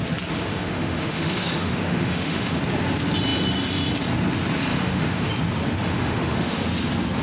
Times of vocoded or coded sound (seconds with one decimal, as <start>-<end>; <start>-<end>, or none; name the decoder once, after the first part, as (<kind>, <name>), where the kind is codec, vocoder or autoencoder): 0.5-2.6 (autoencoder, DAC-VAE); 4.7-5.3; 5.8-6.6